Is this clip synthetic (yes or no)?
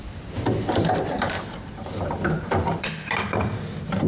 yes